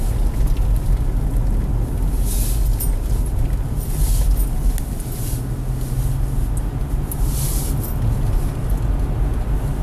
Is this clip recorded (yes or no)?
yes